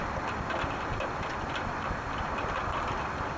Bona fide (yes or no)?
yes